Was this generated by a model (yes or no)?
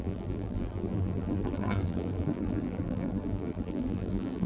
yes